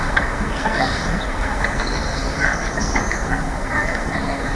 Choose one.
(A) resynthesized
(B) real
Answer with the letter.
A